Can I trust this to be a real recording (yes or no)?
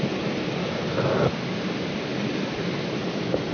yes